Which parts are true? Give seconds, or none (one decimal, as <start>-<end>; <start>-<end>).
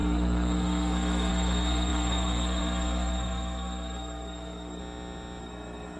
4.8-5.4